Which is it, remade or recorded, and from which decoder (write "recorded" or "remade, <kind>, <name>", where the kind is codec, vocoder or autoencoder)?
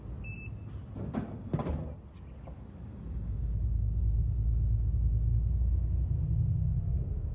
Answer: recorded